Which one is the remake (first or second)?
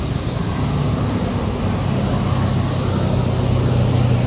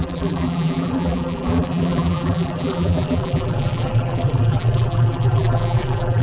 second